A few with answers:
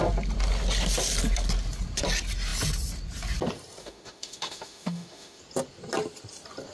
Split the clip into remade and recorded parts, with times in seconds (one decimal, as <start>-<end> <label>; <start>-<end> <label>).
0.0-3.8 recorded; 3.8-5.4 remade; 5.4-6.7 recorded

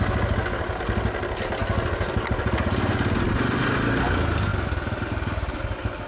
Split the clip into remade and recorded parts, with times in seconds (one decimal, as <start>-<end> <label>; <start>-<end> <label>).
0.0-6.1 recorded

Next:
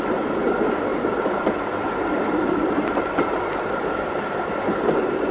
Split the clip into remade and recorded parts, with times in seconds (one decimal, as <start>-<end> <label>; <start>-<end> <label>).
0.0-5.3 recorded

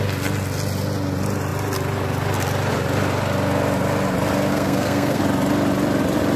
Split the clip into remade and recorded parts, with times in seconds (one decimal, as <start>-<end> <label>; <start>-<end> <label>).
0.0-4.5 recorded; 4.5-5.2 remade; 5.2-6.4 recorded